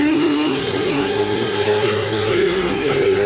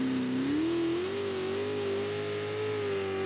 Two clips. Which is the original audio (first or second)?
second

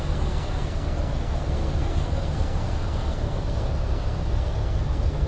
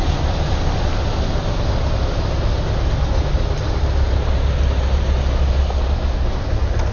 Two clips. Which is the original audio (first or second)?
second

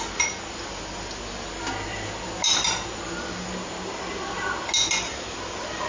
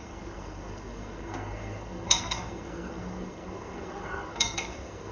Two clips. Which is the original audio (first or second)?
first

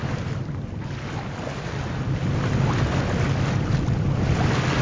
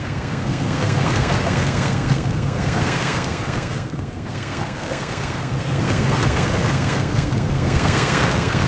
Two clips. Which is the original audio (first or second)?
first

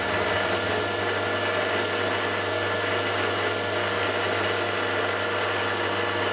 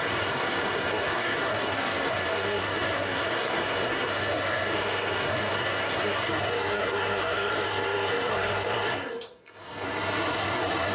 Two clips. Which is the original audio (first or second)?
first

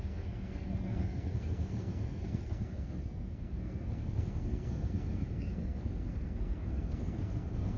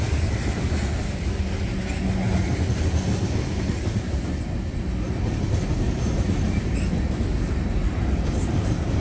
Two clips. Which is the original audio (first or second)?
second